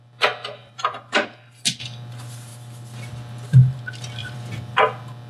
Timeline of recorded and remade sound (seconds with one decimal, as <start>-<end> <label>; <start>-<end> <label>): 0.0-0.6 recorded; 0.6-1.4 remade; 1.4-4.2 recorded; 4.2-4.7 remade; 4.7-5.3 recorded